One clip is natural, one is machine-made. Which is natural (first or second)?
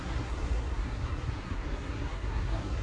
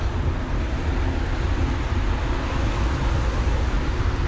second